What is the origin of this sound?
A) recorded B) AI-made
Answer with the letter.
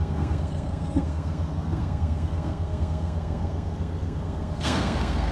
B